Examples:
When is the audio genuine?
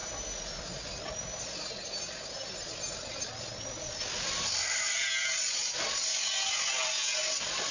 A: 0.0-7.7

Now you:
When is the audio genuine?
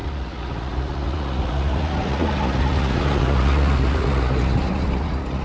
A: none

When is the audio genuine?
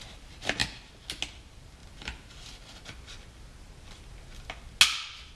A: 0.0-5.4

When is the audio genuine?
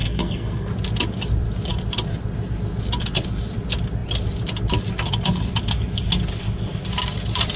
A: 0.7-7.6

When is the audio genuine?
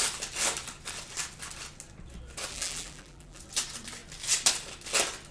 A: 0.0-2.5; 3.4-5.3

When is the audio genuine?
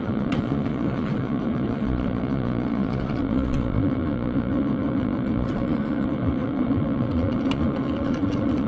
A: none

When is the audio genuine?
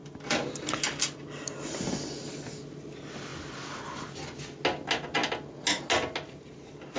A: 0.0-7.0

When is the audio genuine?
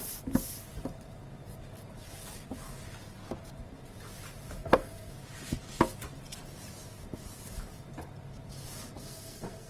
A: 0.0-4.6; 5.1-9.0